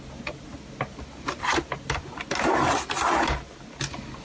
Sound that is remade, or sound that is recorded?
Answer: recorded